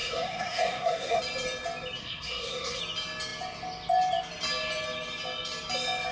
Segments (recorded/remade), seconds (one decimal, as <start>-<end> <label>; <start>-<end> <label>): 0.0-1.2 remade; 1.2-2.0 recorded; 2.0-2.8 remade; 2.8-6.1 recorded